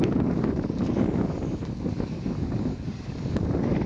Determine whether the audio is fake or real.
fake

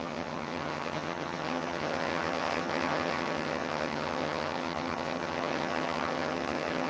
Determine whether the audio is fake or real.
fake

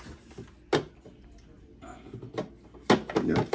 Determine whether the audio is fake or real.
real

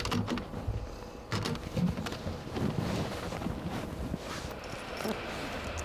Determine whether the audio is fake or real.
real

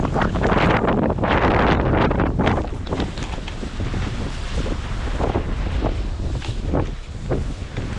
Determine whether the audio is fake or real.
real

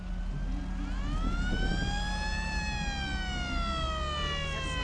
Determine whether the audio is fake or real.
real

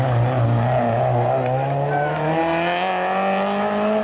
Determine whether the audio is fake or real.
real